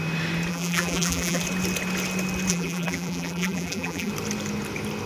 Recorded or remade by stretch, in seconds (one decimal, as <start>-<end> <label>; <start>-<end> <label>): 0.0-0.5 recorded; 0.5-1.4 remade; 1.4-2.5 recorded; 2.5-4.1 remade; 4.1-5.1 recorded